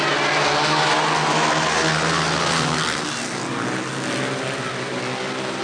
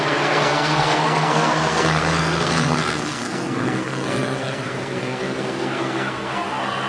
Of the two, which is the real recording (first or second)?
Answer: first